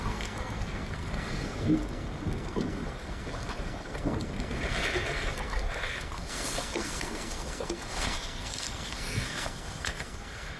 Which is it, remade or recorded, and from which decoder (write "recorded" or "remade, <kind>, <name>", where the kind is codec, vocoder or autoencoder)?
remade, codec, SNAC